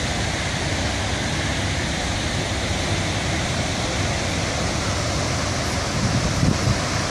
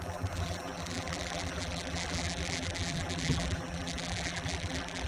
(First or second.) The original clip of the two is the first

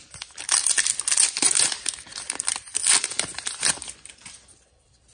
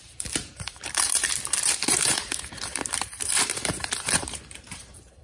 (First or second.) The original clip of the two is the first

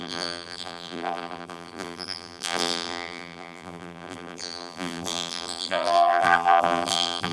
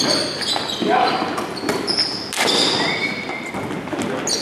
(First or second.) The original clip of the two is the second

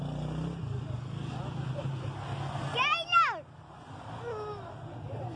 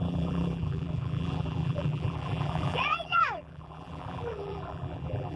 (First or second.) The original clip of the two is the first